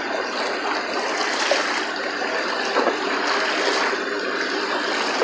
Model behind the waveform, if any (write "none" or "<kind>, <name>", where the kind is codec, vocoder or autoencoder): none